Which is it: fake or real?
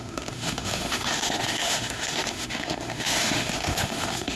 fake